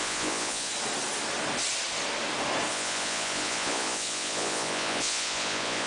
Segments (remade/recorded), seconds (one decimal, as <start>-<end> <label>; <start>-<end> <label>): 0.0-0.7 remade; 0.7-2.7 recorded; 2.7-5.9 remade